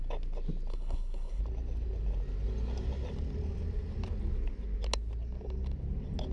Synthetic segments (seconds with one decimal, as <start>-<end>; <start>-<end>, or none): 0.7-1.4